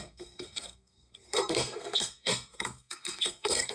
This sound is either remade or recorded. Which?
remade